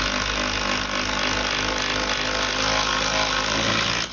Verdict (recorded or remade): recorded